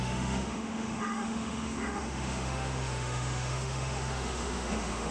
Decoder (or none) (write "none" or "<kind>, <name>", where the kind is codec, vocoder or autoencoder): autoencoder, DAC-VAE